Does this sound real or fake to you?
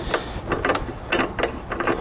real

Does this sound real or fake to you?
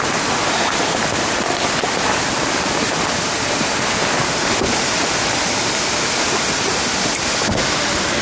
real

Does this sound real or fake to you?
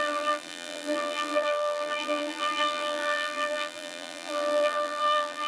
fake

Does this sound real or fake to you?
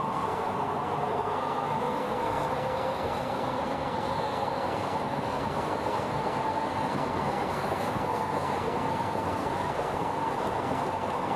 fake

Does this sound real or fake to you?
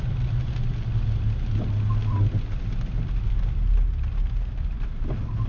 real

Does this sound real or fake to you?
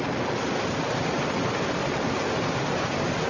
real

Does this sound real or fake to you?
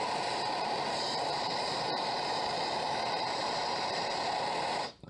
fake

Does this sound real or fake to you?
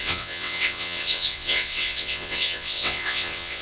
fake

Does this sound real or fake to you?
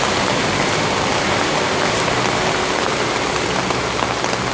real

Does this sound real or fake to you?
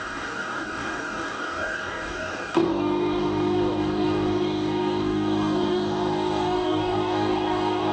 fake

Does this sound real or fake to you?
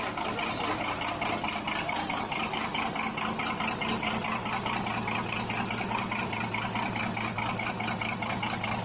real